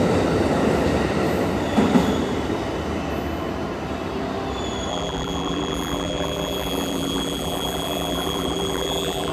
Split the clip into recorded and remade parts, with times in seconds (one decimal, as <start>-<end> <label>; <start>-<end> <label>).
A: 0.0-4.9 recorded; 4.9-9.3 remade